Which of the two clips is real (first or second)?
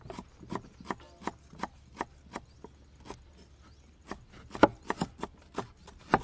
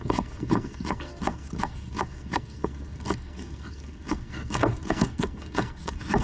first